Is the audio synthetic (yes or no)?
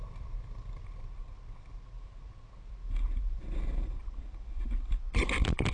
yes